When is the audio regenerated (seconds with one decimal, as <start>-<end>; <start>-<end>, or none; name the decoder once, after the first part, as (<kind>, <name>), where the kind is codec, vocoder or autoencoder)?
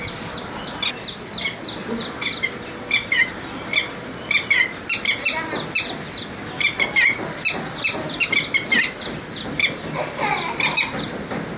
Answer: 1.8-4.6 (vocoder, BigVGAN v2)